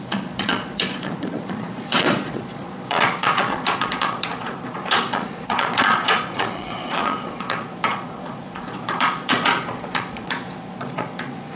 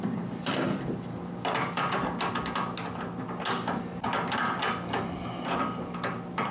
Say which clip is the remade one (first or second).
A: first